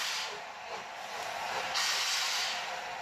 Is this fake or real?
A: real